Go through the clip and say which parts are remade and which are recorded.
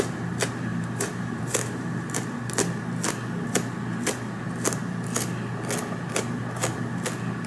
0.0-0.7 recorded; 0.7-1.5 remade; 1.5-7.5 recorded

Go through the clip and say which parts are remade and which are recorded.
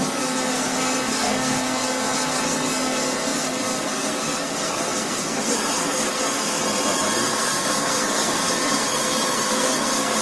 0.0-6.6 remade; 6.6-7.2 recorded; 7.2-10.2 remade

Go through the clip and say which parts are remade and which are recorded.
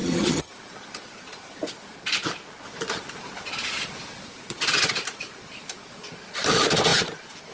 0.0-0.5 remade; 0.5-7.5 recorded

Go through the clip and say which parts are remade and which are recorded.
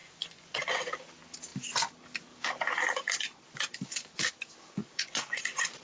0.0-0.8 remade; 0.8-4.8 recorded; 4.8-5.8 remade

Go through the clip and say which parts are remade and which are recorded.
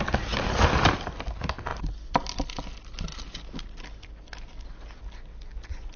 0.0-6.0 recorded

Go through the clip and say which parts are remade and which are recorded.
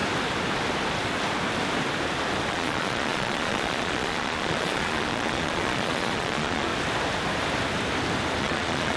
0.0-2.5 recorded; 2.5-6.7 remade; 6.7-8.4 recorded; 8.4-9.0 remade